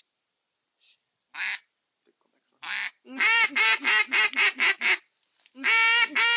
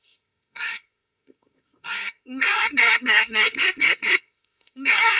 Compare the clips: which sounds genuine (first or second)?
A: first